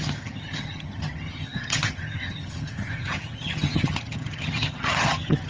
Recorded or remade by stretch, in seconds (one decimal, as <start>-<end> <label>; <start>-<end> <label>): 0.0-5.5 remade